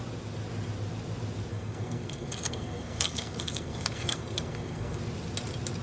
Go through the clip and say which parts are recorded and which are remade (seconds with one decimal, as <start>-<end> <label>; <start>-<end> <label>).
0.0-1.5 recorded; 1.5-5.0 remade; 5.0-5.8 recorded